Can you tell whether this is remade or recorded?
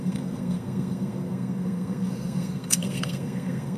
remade